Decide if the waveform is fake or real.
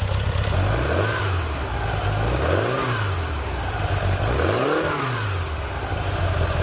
real